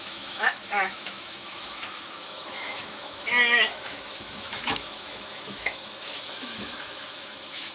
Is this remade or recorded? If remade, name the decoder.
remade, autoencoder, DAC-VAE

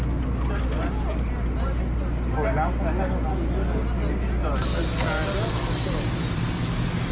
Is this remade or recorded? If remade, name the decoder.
recorded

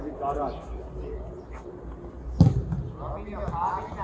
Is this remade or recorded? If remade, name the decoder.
recorded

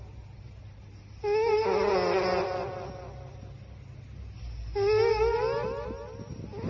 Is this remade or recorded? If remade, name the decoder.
recorded